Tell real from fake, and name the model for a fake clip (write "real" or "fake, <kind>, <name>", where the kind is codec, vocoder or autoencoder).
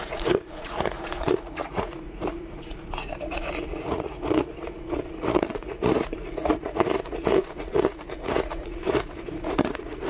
fake, vocoder, Vocos